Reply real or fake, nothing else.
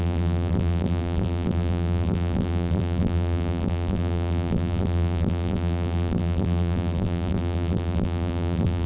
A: fake